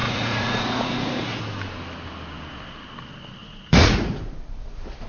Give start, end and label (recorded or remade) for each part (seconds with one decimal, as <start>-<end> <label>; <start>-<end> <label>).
0.0-1.4 remade; 1.4-3.4 recorded; 3.4-4.2 remade; 4.2-5.1 recorded